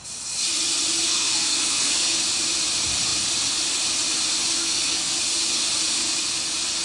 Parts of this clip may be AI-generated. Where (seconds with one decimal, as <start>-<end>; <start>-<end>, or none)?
1.1-2.2; 4.6-5.2